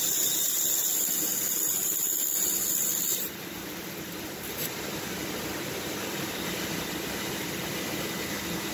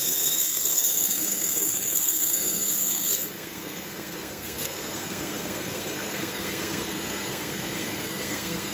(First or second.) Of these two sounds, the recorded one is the first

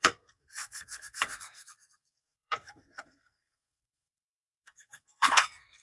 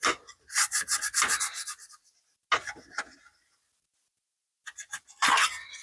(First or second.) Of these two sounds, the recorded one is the second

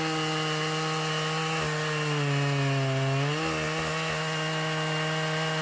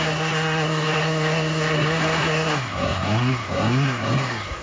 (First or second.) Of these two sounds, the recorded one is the first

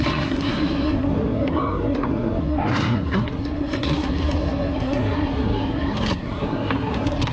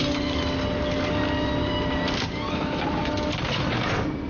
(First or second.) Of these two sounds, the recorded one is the second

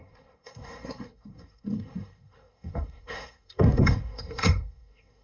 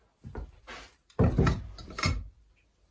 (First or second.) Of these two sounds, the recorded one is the second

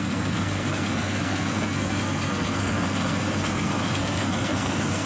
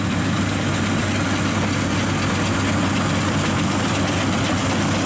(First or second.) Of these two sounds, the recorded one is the second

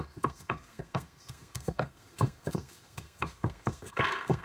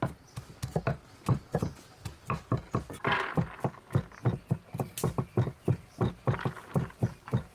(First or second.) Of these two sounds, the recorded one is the second